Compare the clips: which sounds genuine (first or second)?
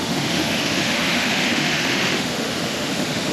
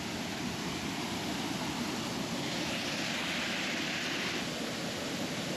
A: second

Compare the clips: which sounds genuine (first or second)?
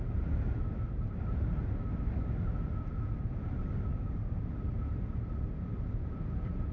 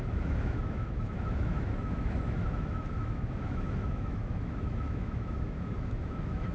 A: first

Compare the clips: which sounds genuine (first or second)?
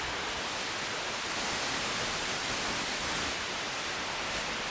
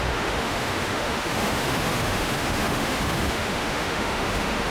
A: first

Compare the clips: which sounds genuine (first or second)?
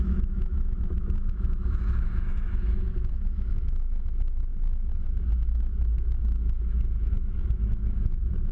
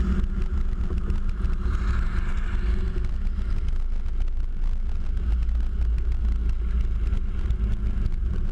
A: second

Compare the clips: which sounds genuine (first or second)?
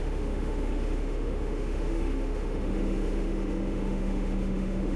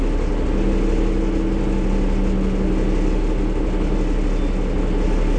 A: second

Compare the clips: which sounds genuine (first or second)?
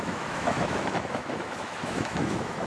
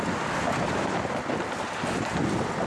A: second